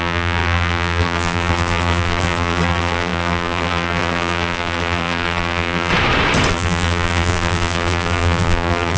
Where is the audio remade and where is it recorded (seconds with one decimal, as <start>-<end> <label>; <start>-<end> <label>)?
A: 0.0-5.9 remade; 5.9-6.5 recorded; 6.5-9.0 remade